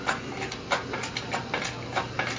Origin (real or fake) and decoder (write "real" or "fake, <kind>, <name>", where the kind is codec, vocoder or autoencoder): real